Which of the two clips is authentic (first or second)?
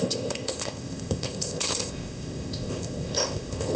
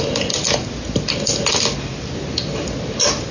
second